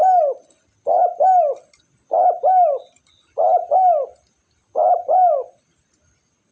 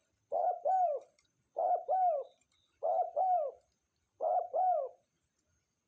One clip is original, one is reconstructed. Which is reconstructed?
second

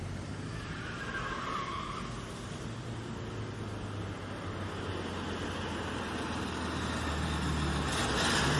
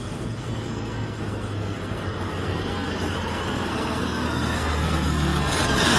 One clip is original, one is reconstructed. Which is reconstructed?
second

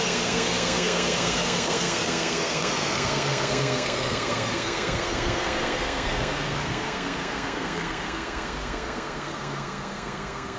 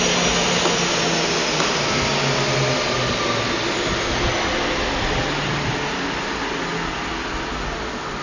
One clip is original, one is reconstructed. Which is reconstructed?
first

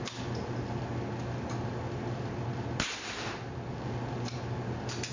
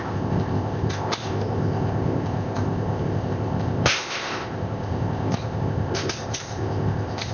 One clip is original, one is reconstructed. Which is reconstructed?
second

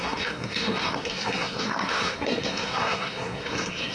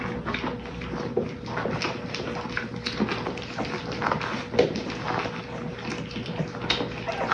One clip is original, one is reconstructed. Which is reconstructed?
first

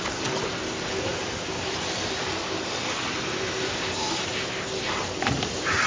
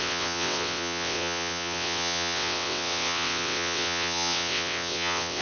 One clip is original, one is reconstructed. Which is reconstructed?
second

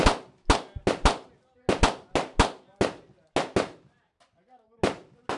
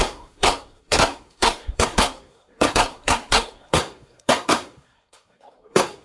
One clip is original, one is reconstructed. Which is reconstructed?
second